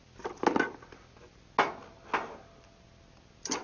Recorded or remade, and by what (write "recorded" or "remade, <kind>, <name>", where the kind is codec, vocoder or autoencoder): recorded